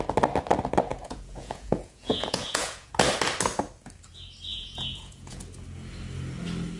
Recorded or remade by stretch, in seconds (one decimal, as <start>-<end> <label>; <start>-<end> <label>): 0.0-0.9 recorded; 0.9-2.9 remade; 2.9-4.5 recorded; 4.5-5.4 remade; 5.4-6.8 recorded